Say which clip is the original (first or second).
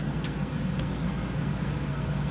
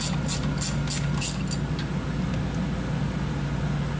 second